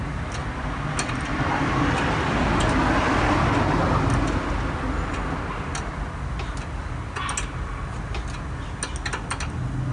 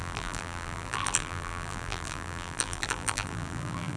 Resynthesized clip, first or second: second